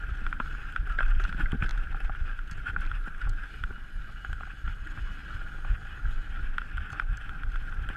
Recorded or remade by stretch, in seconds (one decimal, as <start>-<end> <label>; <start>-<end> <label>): 0.0-8.0 recorded

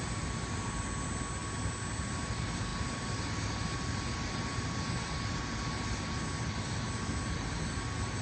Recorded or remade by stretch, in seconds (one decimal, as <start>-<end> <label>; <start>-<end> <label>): 0.0-8.2 recorded

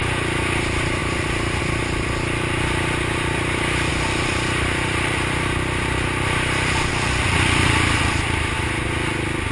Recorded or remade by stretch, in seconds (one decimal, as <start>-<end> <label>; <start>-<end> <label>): 0.0-1.0 recorded; 1.0-1.6 remade; 1.6-3.9 recorded; 3.9-6.9 remade; 6.9-9.5 recorded